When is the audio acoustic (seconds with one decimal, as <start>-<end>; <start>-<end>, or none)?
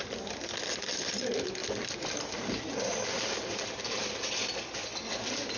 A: 0.0-5.6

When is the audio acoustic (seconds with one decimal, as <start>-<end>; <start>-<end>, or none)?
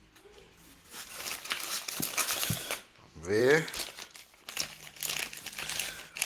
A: 0.0-2.2; 3.4-6.2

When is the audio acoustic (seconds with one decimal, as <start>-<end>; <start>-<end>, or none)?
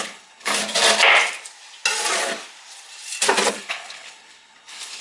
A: 0.5-3.5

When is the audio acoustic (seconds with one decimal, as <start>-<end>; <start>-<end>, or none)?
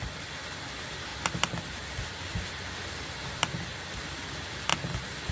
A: 4.7-5.3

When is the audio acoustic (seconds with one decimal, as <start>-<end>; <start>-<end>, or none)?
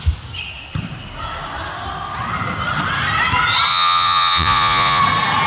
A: 0.0-3.7; 5.0-5.5